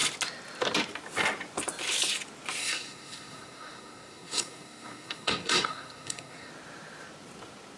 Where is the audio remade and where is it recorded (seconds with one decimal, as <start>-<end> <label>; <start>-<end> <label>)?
0.0-2.6 recorded; 2.6-6.5 remade; 6.5-7.8 recorded